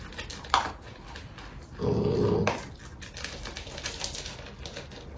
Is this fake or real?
real